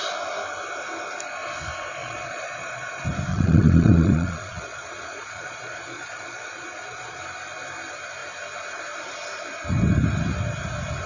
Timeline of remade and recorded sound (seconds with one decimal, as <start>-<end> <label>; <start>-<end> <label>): 0.0-2.0 recorded; 2.0-2.9 remade; 2.9-3.3 recorded; 3.3-7.2 remade; 7.2-11.1 recorded